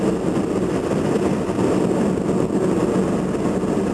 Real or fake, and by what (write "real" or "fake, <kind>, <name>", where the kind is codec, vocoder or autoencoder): real